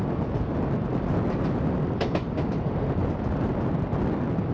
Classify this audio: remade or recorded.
recorded